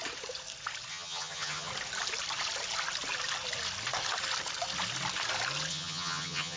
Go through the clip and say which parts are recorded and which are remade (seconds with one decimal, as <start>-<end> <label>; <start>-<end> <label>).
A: 0.0-0.9 recorded; 0.9-1.7 remade; 1.7-5.7 recorded; 5.7-6.6 remade